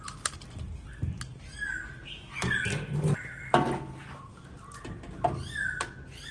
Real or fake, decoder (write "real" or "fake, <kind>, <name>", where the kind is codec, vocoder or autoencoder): real